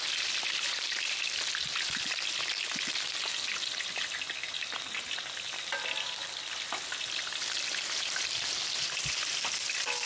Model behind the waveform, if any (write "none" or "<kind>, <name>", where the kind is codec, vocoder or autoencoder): none